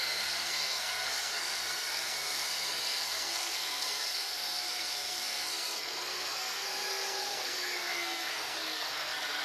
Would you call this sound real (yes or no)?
no